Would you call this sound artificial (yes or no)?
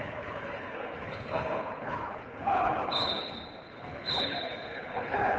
yes